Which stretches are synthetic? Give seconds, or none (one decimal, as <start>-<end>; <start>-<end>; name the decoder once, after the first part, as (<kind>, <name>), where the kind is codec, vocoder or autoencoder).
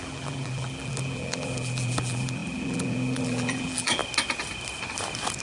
0.0-4.0 (vocoder, BigVGAN v2)